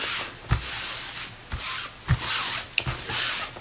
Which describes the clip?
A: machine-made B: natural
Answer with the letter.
B